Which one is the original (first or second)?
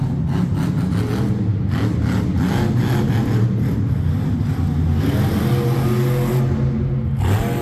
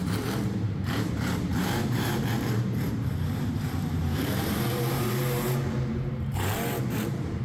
first